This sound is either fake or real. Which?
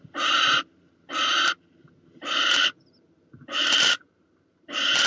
fake